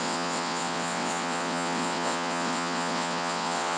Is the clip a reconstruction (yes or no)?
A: yes